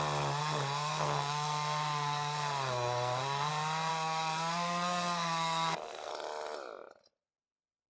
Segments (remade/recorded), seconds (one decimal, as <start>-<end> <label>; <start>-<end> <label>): 0.0-0.4 recorded; 0.4-3.5 remade; 3.5-3.9 recorded; 3.9-6.1 remade; 6.1-7.9 recorded